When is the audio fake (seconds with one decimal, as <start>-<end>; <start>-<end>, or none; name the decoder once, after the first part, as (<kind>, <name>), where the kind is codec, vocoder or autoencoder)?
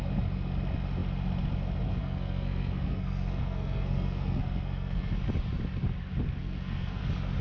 2.0-5.1 (codec, SNAC); 6.4-7.0